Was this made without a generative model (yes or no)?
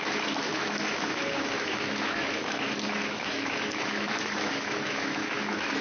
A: no